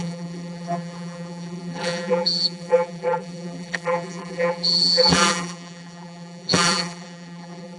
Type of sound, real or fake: fake